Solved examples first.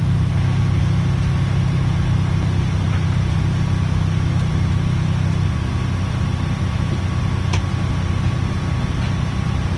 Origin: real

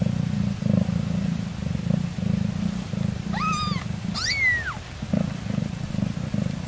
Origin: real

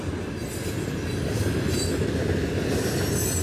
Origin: real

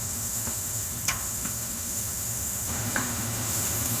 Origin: fake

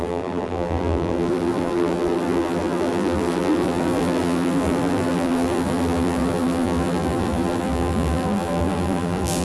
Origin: fake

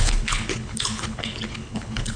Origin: fake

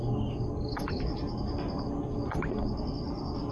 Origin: real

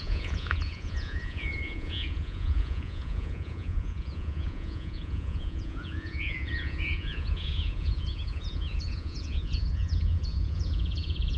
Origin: fake